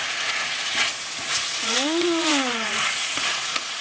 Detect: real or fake fake